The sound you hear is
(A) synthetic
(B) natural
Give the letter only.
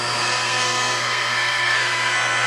A